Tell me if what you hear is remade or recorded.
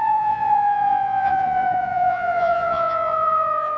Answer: remade